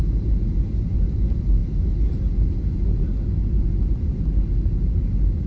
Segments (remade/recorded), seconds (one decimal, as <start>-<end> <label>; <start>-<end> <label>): 0.0-5.5 recorded